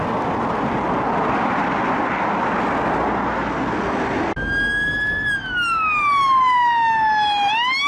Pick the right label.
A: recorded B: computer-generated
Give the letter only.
A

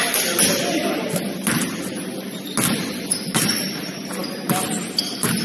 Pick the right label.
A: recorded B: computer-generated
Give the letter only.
A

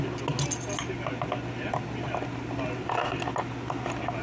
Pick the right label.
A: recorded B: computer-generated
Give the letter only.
A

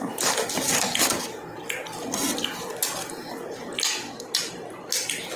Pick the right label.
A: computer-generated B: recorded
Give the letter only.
B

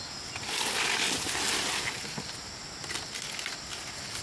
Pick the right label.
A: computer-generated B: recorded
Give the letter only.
B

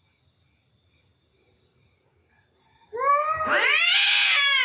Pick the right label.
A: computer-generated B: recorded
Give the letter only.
B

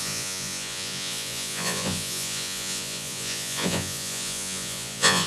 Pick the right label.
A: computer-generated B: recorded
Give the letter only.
A